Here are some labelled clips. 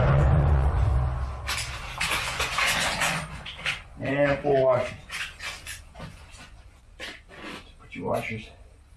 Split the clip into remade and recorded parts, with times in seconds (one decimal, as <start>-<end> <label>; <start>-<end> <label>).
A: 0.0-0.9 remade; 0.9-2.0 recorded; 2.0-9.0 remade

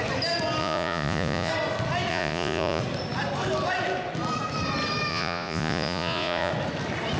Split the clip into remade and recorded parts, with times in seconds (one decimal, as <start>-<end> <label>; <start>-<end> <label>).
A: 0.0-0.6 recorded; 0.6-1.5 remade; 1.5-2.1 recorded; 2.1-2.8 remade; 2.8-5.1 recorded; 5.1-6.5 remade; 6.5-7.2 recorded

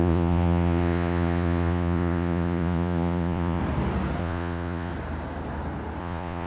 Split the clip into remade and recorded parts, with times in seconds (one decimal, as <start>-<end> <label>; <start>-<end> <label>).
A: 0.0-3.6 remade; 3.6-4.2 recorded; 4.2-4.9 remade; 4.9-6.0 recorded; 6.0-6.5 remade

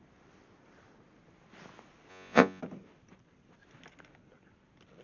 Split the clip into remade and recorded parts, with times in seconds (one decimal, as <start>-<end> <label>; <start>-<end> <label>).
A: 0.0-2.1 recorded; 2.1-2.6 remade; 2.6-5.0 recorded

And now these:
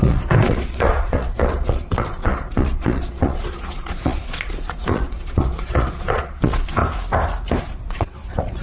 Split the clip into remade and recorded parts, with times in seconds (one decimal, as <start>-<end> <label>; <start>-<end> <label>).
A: 0.0-6.8 remade; 6.8-7.6 recorded; 7.6-8.6 remade

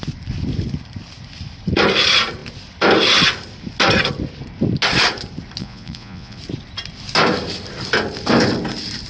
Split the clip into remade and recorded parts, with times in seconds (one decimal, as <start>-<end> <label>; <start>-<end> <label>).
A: 0.0-5.6 recorded; 5.6-6.4 remade; 6.4-9.1 recorded

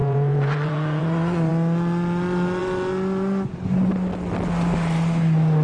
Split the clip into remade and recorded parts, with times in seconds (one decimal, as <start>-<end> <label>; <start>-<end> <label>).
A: 0.0-1.5 remade; 1.5-5.6 recorded